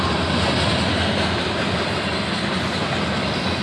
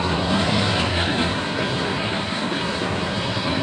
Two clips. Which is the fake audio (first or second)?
second